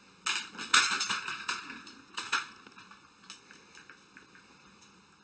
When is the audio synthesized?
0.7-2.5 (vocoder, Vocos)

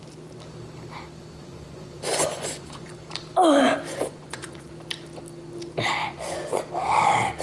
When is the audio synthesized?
1.4-2.9 (vocoder, Vocos); 3.9-4.7; 6.0-6.6